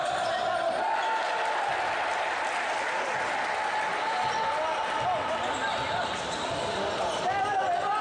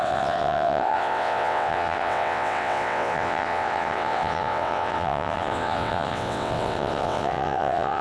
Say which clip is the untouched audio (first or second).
first